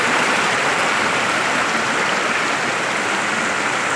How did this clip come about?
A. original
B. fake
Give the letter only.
A